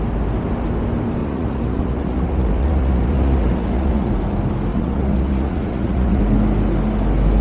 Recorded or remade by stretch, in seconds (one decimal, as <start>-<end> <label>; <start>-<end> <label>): 0.0-1.2 recorded; 1.2-4.1 remade; 4.1-4.7 recorded; 4.7-6.2 remade; 6.2-7.4 recorded